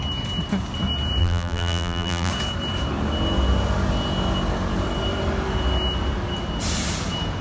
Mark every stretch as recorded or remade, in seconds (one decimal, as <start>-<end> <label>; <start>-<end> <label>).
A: 0.0-1.2 recorded; 1.2-2.3 remade; 2.3-7.4 recorded